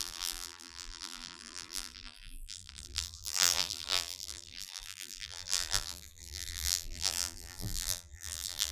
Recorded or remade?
remade